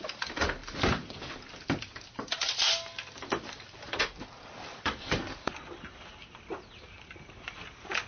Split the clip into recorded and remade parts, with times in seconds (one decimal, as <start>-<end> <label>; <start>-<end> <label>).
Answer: 0.0-8.1 remade